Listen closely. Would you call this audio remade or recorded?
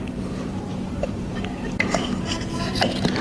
remade